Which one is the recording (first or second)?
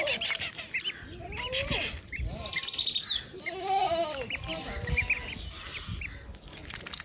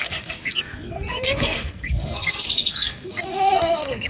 first